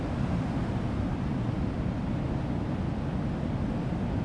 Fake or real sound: real